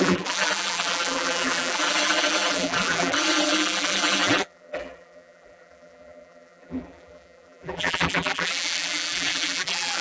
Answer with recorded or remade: remade